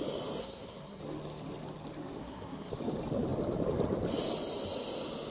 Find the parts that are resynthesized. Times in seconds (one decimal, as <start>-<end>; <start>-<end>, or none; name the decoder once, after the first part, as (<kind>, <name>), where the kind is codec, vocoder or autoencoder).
0.4-1.0 (codec, SNAC); 2.2-2.7